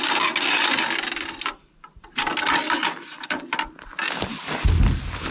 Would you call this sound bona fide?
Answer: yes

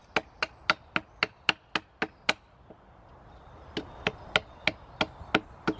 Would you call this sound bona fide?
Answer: yes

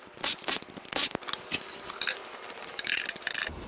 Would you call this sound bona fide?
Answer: yes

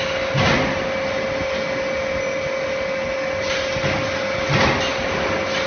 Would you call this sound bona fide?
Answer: yes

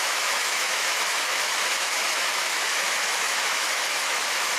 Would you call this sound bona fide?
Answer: no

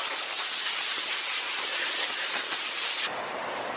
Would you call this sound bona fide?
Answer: yes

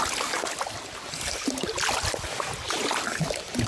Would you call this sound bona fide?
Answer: yes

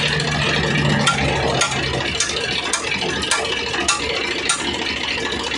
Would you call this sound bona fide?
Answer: yes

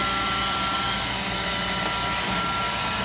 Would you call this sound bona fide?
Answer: yes